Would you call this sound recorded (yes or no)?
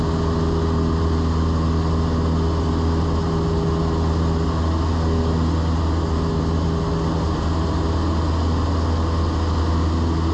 yes